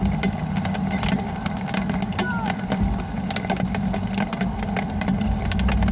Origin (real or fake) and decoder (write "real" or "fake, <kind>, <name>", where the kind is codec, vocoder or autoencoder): real